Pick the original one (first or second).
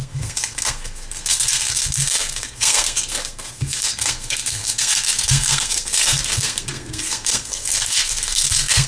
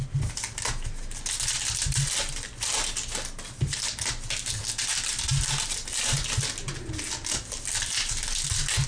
second